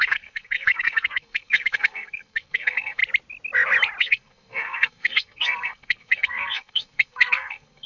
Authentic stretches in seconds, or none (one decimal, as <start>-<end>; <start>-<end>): 3.0-4.0